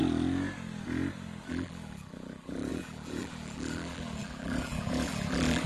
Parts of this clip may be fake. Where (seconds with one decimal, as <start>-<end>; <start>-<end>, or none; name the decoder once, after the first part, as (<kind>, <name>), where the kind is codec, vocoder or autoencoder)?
1.5-5.7 (vocoder, BigVGAN v2)